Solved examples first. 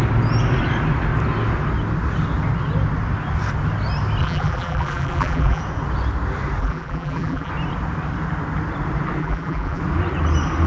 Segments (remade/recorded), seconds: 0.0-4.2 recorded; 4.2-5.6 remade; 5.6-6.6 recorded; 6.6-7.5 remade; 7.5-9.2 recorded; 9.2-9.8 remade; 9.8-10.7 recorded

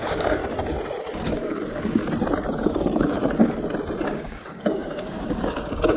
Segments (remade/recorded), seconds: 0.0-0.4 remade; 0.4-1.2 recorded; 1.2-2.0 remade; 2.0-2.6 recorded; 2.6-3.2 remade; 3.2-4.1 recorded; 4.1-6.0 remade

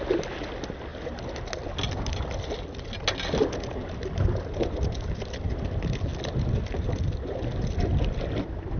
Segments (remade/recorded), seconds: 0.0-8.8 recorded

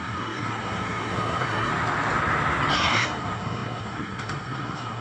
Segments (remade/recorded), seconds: 0.0-1.7 remade; 1.7-2.7 recorded; 2.7-5.0 remade

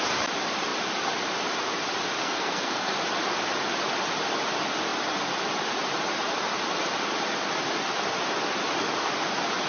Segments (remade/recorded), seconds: 0.0-2.2 recorded; 2.2-2.9 remade; 2.9-9.7 recorded

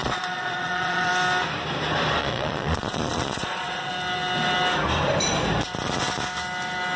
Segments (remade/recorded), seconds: 0.0-1.1 remade; 1.1-2.2 recorded; 2.2-3.9 remade; 3.9-7.0 recorded

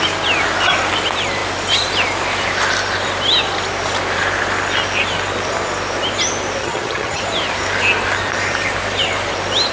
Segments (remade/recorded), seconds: 0.0-6.6 recorded; 6.6-7.2 remade; 7.2-9.7 recorded